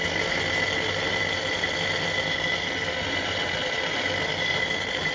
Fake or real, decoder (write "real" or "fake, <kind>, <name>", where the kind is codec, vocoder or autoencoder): real